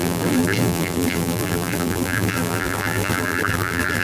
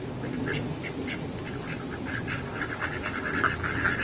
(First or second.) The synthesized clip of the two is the first